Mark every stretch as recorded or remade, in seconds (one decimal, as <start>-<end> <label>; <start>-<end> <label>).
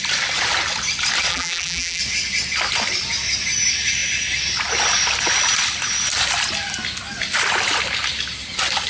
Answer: 0.0-1.3 recorded; 1.3-2.0 remade; 2.0-8.9 recorded